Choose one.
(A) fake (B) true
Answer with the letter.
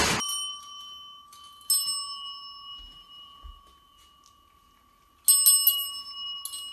B